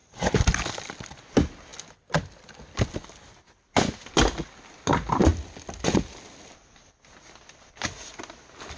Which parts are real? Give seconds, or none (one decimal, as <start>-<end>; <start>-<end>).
0.0-8.8